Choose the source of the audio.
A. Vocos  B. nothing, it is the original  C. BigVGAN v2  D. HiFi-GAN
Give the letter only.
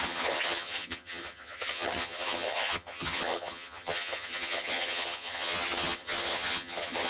D